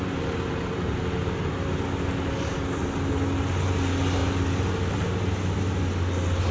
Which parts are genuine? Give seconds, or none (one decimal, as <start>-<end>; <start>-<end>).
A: 0.0-6.5